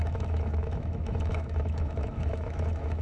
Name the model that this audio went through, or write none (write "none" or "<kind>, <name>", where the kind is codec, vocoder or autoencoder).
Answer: autoencoder, DAC-VAE